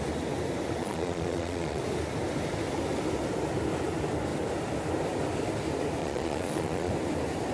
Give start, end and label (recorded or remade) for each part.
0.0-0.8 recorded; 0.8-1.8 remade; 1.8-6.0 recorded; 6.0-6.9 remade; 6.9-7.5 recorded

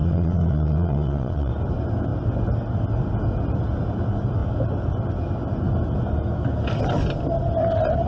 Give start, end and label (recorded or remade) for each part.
0.0-1.5 remade; 1.5-8.1 recorded

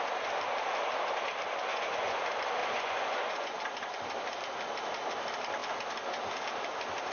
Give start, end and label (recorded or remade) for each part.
0.0-1.7 recorded; 1.7-2.2 remade; 2.2-2.6 recorded; 2.6-3.6 remade; 3.6-7.1 recorded

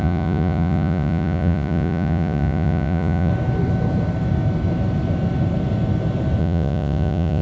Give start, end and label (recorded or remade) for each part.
0.0-3.3 remade; 3.3-6.4 recorded; 6.4-7.4 remade